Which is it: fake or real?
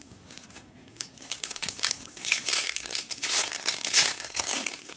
fake